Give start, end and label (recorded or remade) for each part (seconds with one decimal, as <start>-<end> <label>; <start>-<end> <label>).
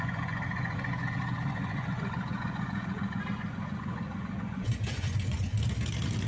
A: 0.0-5.5 remade; 5.5-6.3 recorded